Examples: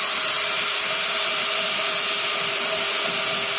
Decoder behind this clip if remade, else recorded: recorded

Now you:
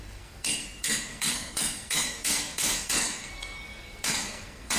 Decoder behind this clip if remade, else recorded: remade, codec, SNAC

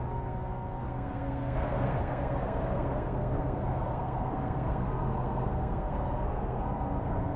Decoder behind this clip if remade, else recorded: remade, codec, SNAC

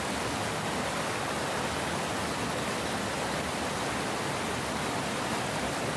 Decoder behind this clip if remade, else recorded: recorded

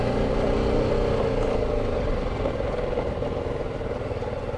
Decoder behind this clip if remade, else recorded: recorded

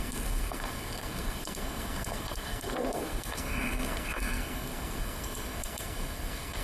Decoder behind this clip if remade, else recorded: remade, codec, SNAC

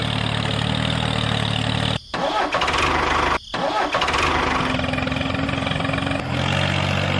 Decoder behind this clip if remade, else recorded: recorded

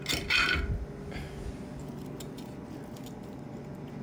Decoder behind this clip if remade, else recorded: recorded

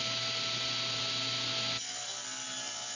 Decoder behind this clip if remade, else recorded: recorded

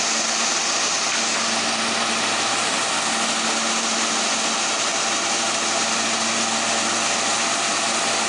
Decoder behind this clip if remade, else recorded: recorded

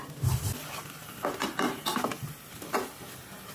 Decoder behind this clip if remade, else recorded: recorded